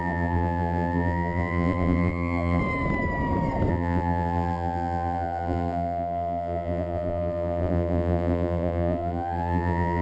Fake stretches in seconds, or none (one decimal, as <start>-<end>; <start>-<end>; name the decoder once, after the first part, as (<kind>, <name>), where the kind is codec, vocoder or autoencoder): 0.0-2.6 (vocoder, BigVGAN v2); 3.7-10.0